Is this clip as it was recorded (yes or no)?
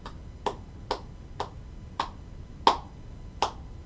yes